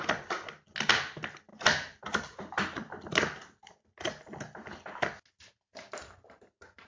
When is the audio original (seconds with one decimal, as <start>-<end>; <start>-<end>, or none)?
0.0-6.9